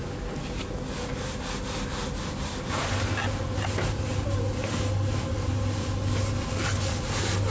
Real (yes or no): yes